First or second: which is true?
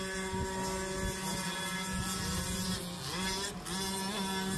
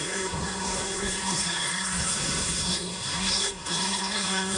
first